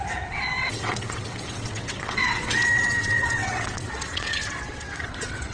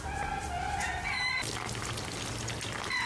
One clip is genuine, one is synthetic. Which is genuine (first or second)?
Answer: second